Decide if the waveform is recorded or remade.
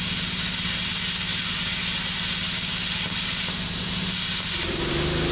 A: recorded